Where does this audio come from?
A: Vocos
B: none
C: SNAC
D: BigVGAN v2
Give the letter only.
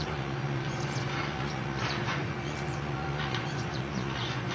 A